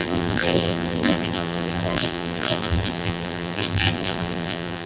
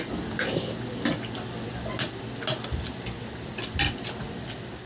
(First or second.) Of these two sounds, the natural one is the second